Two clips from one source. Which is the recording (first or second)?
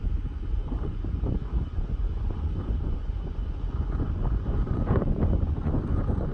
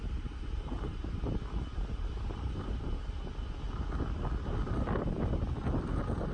second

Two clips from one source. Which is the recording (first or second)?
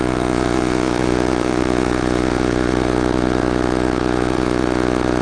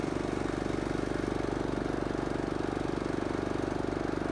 second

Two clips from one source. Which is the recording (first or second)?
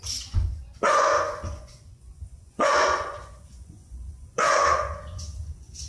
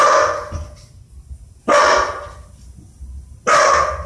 second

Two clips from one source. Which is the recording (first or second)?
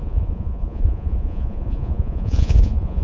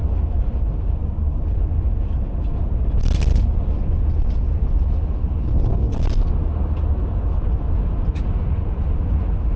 second